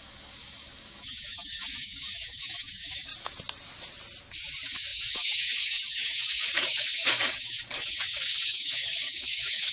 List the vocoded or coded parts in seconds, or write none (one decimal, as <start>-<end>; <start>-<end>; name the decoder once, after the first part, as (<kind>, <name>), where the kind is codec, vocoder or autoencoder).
0.0-3.1 (codec, DAC); 4.3-9.7